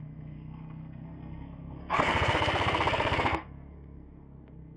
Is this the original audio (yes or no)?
no